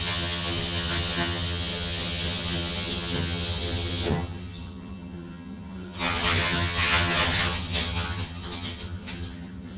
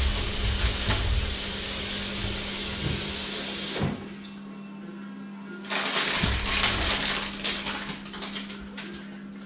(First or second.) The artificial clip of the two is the first